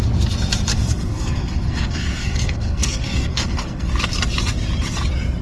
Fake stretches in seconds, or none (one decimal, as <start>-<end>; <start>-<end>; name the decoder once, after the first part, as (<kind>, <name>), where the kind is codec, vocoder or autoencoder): 0.7-3.9 (codec, SNAC)